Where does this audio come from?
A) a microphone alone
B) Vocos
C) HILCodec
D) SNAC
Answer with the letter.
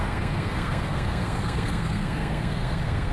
D